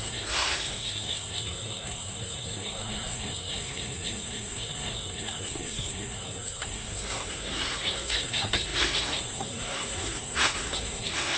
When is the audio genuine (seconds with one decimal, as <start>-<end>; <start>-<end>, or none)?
none

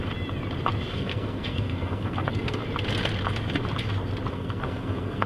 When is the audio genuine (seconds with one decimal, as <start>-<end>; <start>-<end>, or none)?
0.0-0.9; 2.6-4.3